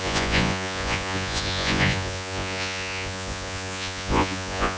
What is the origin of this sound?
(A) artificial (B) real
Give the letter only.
A